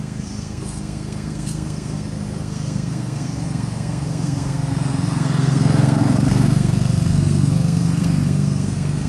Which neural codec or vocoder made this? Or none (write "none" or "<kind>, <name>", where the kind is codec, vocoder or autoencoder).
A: codec, SNAC